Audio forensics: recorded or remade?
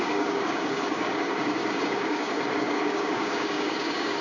remade